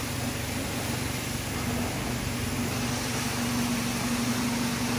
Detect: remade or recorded recorded